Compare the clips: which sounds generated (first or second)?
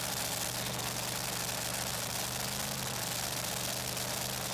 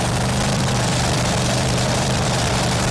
second